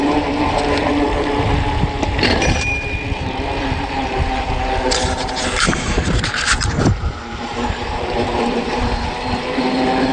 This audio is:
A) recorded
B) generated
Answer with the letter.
B